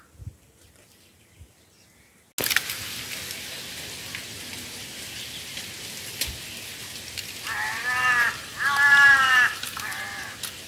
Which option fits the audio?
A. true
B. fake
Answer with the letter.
A